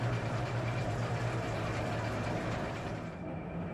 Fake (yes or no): yes